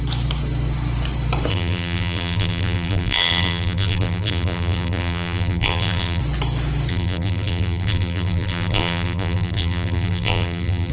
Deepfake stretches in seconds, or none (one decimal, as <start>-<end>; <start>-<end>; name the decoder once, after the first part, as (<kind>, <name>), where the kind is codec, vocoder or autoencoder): 1.5-6.2 (vocoder, BigVGAN v2); 6.9-10.9